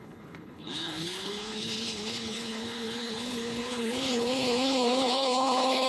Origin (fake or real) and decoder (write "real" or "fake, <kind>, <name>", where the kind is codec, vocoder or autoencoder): fake, codec, HILCodec